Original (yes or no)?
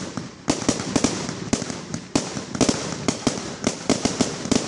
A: yes